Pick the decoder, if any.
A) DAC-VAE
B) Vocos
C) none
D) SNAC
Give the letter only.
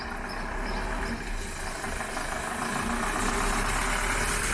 C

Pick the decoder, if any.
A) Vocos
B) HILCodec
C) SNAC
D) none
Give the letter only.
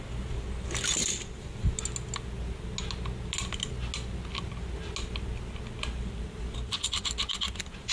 D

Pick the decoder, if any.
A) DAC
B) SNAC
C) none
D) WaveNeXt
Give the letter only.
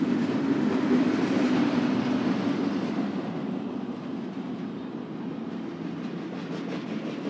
C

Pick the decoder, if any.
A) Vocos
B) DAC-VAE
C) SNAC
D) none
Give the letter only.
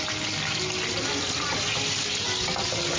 D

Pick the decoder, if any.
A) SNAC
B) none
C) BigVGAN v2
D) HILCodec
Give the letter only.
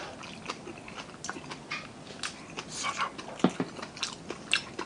B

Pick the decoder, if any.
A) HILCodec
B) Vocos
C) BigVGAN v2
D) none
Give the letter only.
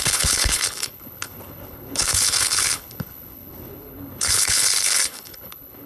A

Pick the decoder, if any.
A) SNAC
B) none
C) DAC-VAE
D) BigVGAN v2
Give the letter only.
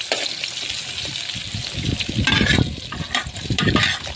B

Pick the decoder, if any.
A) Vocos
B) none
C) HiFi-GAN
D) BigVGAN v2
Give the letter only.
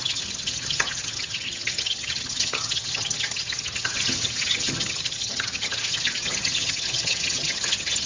C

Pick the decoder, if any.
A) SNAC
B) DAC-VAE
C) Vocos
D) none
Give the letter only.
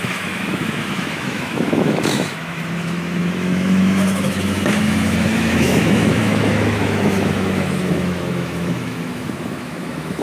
B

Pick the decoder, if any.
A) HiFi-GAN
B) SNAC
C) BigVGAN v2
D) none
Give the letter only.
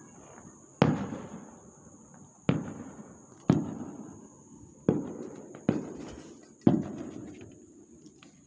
D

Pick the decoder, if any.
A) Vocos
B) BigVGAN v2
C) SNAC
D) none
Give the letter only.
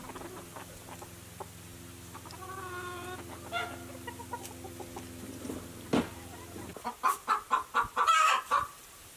D